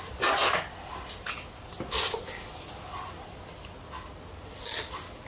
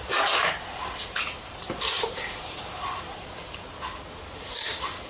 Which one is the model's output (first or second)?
second